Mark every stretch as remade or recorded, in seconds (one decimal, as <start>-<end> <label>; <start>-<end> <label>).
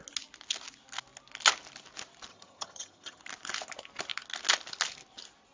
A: 0.0-2.3 recorded; 2.3-3.2 remade; 3.2-5.5 recorded